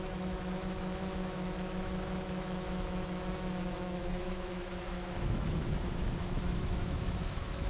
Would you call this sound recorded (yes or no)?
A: no